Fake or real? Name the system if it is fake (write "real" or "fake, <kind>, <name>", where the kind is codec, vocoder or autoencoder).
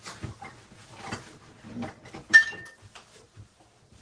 real